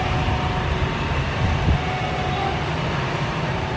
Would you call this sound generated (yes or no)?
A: yes